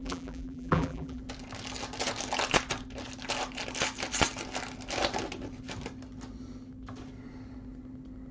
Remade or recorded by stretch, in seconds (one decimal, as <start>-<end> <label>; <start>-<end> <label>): 0.0-1.2 remade; 1.2-8.3 recorded